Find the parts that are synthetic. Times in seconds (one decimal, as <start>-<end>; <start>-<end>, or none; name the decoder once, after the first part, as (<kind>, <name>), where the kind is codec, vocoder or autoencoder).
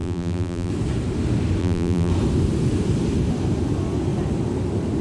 0.0-0.7 (vocoder, BigVGAN v2); 1.6-2.1